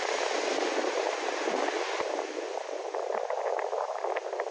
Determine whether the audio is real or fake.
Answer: real